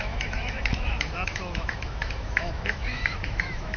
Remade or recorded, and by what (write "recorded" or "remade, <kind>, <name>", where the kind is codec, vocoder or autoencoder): remade, autoencoder, DAC-VAE